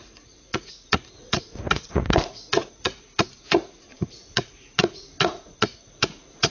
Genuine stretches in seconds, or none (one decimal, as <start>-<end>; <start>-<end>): none

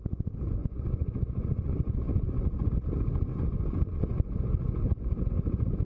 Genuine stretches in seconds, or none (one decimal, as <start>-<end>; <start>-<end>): 0.0-0.6; 2.7-3.3; 5.3-5.8